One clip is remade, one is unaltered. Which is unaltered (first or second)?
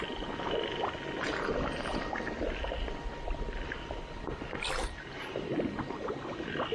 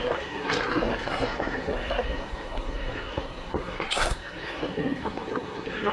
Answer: first